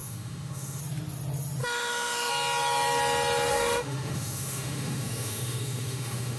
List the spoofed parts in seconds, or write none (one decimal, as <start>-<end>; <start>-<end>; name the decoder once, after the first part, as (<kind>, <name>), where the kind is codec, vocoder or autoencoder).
0.0-0.8 (autoencoder, DAC-VAE); 1.6-2.3; 3.5-6.4